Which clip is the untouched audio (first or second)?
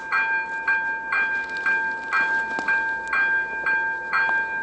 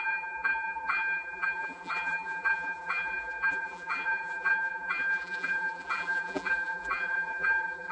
first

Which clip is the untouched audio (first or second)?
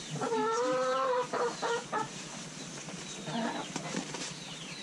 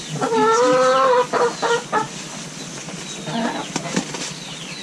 second